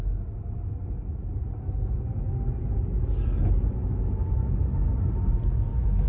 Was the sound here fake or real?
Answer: real